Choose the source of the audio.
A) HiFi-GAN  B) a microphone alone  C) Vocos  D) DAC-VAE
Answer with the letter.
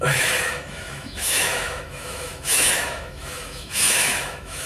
D